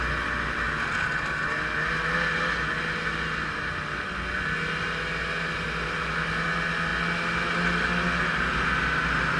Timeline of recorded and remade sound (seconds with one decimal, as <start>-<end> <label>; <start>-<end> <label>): 0.0-9.4 recorded